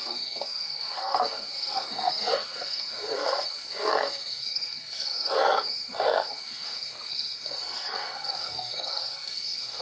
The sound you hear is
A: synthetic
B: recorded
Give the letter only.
A